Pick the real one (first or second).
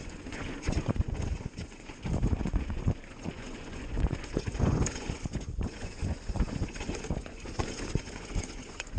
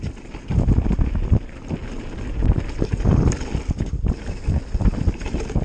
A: second